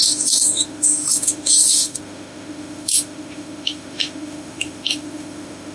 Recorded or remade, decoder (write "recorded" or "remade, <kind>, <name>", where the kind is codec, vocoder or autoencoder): remade, autoencoder, DAC-VAE